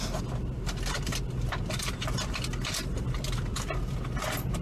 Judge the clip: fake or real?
real